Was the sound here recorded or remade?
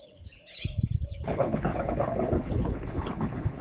remade